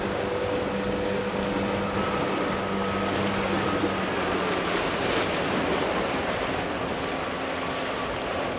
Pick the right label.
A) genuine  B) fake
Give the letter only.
A